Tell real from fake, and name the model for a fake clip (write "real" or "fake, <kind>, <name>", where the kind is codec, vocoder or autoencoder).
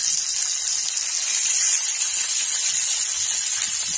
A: real